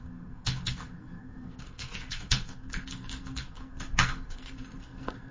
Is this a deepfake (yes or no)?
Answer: yes